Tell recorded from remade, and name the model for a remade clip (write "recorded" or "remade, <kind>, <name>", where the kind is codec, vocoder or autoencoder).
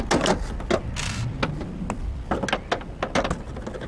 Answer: recorded